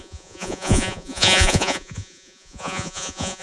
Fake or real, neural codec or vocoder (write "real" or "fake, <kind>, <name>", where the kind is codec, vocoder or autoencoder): fake, vocoder, Vocos